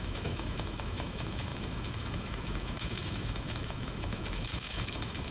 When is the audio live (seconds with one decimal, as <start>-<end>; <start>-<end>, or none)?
none